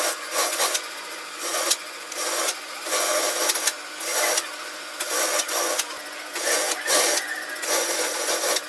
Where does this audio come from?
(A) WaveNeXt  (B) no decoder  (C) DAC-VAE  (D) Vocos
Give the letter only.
D